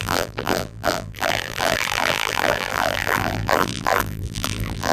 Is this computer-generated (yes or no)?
yes